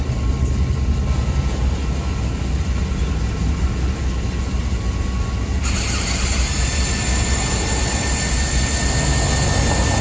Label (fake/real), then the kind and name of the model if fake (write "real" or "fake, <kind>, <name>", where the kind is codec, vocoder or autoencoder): real